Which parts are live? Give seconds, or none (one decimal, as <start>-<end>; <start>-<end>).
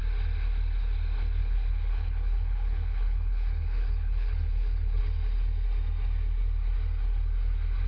0.0-1.4; 5.0-7.9